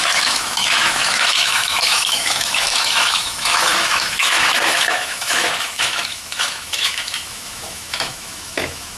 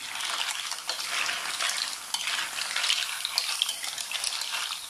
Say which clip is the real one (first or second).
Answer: second